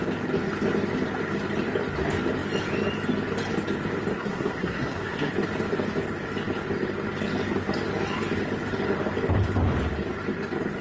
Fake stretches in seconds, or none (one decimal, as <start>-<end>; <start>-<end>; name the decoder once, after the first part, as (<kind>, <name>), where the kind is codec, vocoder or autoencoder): 4.1-5.3 (codec, SNAC)